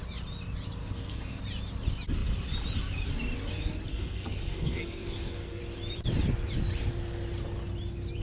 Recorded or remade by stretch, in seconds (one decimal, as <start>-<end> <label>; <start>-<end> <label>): 0.0-0.8 recorded; 0.8-1.4 remade; 1.4-3.9 recorded; 3.9-5.6 remade; 5.6-8.2 recorded